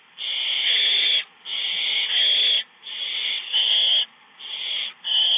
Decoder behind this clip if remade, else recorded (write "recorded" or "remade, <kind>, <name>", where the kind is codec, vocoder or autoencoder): recorded